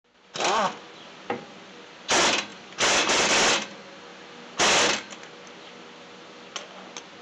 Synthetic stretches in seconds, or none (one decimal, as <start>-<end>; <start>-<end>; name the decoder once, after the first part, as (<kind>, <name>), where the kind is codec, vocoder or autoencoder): 2.5-3.3 (vocoder, BigVGAN v2)

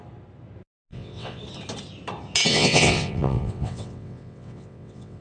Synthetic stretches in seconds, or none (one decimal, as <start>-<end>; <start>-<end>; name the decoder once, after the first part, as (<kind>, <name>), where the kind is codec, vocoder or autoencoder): 0.9-1.4 (vocoder, WaveNeXt); 2.5-5.2

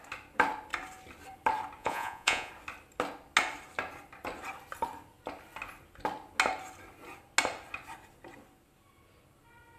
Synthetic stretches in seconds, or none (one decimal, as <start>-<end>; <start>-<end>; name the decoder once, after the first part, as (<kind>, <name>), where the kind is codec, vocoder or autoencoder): 1.8-2.5 (vocoder, Vocos)

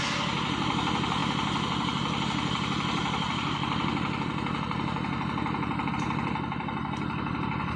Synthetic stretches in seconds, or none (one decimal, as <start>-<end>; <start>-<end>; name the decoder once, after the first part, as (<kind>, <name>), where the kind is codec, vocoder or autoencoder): none

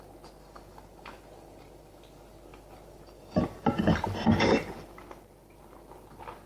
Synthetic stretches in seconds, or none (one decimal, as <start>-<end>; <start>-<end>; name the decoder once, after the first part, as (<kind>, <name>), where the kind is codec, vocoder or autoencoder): 2.5-6.5 (vocoder, BigVGAN v2)

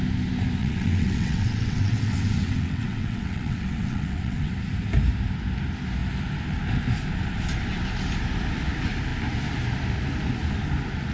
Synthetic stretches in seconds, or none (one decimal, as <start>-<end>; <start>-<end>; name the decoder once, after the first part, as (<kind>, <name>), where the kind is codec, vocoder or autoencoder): 0.6-4.5 (vocoder, WaveNeXt)